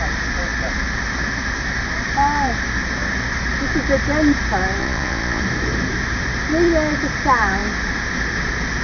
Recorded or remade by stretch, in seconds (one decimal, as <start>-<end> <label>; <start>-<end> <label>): 0.0-4.8 recorded; 4.8-5.4 remade; 5.4-8.8 recorded